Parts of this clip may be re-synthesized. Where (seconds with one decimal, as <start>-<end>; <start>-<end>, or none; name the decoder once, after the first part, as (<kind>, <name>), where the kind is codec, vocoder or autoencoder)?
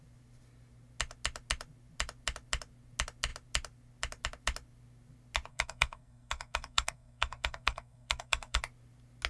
5.5-8.6 (codec, SNAC)